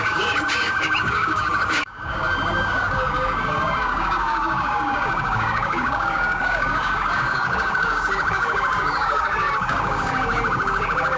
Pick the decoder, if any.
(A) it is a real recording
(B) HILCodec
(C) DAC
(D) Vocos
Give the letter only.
C